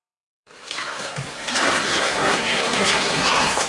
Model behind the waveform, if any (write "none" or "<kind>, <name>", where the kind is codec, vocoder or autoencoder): codec, SNAC